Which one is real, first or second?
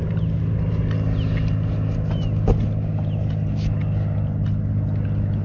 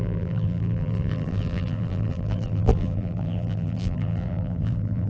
first